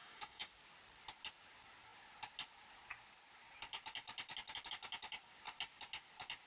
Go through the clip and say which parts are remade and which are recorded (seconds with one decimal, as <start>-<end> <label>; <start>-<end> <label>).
0.0-0.5 remade; 0.5-6.5 recorded